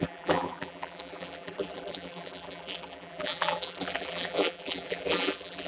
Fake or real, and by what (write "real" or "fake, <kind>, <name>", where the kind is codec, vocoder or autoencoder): fake, vocoder, BigVGAN v2